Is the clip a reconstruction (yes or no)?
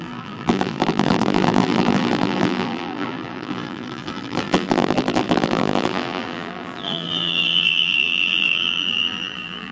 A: yes